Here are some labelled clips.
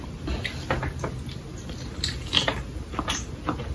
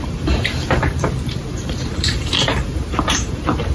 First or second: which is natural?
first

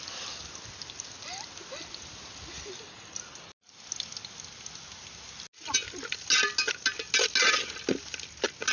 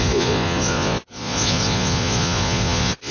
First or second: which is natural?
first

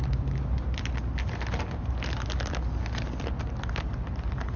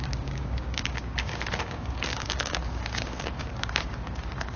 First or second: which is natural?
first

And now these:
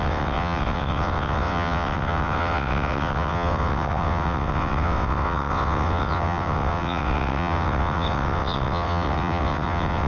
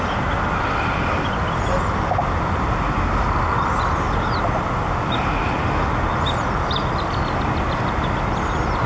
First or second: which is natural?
second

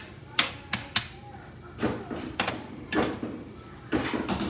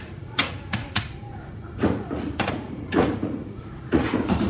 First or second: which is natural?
first